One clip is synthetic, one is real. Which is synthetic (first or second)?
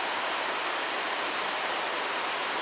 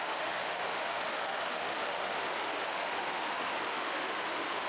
second